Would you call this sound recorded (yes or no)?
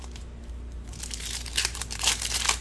no